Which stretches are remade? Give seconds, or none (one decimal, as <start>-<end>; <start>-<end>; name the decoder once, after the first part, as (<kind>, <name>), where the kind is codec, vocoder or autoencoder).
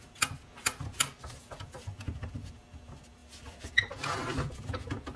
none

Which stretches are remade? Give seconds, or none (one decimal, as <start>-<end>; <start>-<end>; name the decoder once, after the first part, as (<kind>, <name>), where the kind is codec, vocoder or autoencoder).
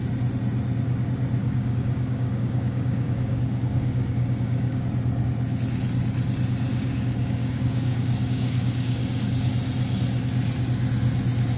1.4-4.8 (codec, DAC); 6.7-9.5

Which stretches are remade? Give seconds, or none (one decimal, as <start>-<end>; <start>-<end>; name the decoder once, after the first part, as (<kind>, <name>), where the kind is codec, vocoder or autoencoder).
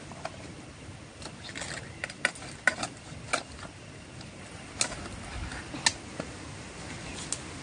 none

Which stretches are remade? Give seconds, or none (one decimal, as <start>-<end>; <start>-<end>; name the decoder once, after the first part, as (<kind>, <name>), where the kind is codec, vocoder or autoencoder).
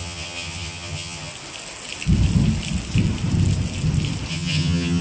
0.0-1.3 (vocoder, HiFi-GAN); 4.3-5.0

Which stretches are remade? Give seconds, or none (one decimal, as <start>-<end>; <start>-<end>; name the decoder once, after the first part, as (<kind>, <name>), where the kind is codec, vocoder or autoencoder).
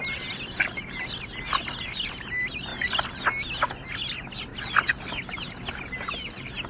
none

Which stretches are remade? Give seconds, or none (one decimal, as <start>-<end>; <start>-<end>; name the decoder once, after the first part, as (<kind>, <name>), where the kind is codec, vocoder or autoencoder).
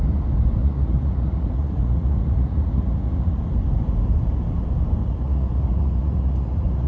0.6-3.4 (vocoder, Vocos); 5.0-6.9